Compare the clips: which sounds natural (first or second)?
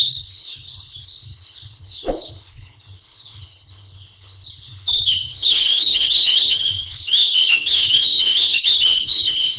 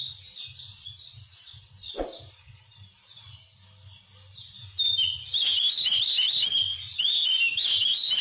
second